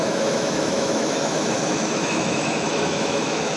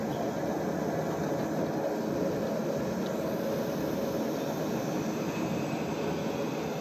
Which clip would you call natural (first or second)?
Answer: second